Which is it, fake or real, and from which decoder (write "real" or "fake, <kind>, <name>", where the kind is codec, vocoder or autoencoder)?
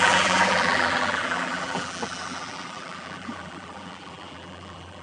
fake, vocoder, BigVGAN v2